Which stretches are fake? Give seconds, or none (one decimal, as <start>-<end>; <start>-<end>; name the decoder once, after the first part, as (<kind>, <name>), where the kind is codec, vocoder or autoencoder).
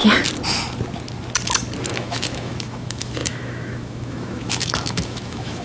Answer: 1.9-5.6 (autoencoder, DAC-VAE)